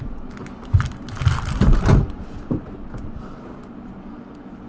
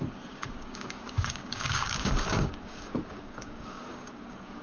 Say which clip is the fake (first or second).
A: second